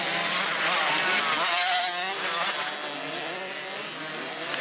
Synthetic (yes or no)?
no